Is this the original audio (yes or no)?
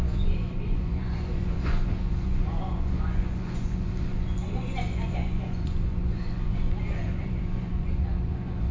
no